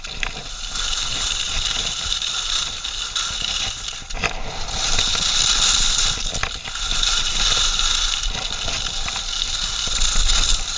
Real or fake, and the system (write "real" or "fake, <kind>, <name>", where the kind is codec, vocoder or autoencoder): real